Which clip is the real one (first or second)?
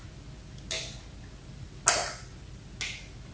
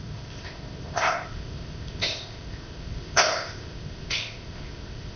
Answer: first